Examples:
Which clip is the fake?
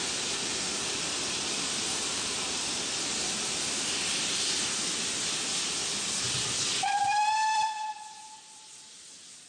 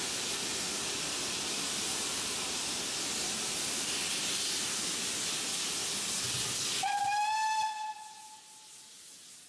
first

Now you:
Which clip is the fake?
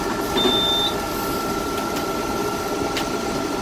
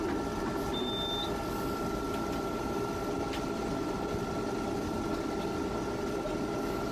first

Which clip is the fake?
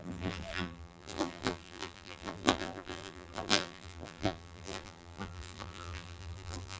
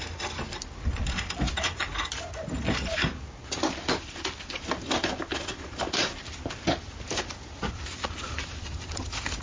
first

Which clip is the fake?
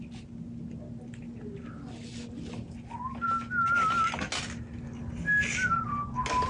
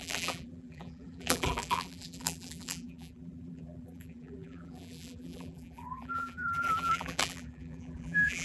second